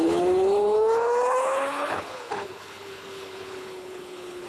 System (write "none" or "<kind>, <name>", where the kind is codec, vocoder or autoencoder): codec, HILCodec